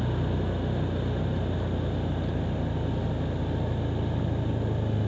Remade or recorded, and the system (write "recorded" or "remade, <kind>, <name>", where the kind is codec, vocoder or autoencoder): recorded